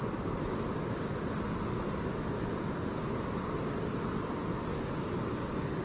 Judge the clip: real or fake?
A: real